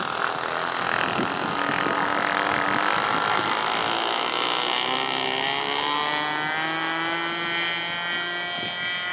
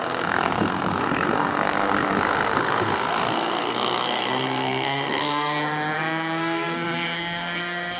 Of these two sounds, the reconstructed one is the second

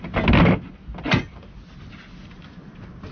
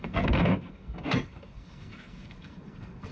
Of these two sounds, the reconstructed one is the second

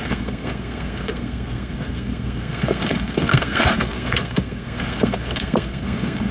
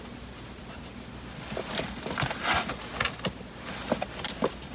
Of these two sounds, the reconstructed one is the first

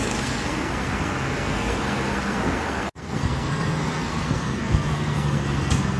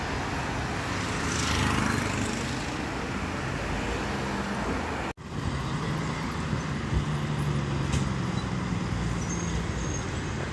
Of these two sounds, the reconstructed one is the first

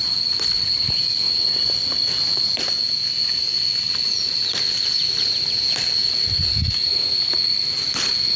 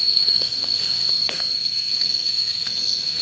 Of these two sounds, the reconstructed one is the second